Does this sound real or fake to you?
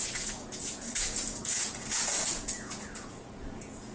fake